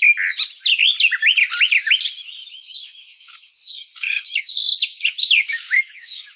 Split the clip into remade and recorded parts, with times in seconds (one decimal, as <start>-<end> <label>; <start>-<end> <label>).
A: 0.0-2.4 recorded; 2.4-6.4 remade